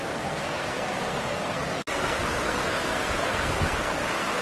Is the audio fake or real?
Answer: fake